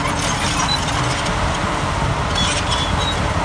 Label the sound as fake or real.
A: real